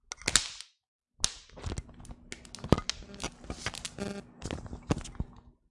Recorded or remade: recorded